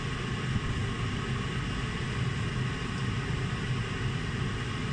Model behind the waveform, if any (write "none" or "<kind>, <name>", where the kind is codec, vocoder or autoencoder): none